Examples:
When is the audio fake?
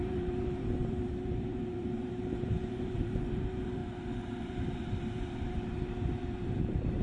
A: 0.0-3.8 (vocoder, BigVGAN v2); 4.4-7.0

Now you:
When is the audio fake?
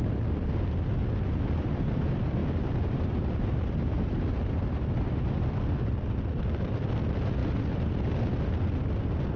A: 2.4-6.9 (vocoder, BigVGAN v2)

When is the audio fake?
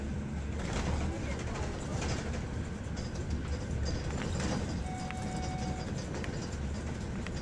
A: 1.9-4.8 (vocoder, BigVGAN v2)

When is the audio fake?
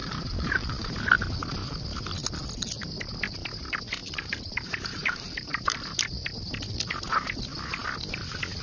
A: 0.0-0.7 (vocoder, BigVGAN v2); 4.0-6.6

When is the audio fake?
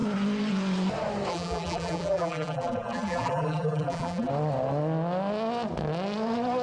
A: 1.3-4.3 (vocoder, BigVGAN v2)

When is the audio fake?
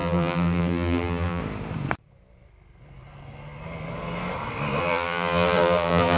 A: 0.0-1.4 (vocoder, BigVGAN v2); 4.8-6.2